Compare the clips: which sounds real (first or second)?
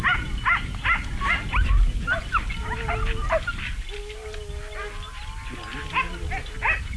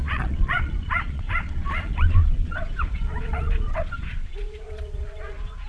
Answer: first